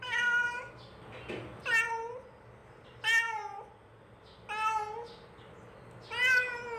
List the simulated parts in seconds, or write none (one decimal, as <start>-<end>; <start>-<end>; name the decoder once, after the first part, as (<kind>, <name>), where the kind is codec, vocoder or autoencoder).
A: none